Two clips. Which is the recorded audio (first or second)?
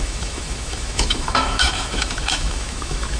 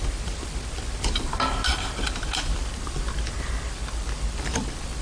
second